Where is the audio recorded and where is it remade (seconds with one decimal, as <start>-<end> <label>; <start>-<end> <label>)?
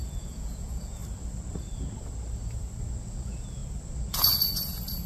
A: 0.0-1.0 remade; 1.0-3.0 recorded; 3.0-3.6 remade; 3.6-4.1 recorded; 4.1-5.1 remade